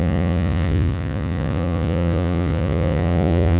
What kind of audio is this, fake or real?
fake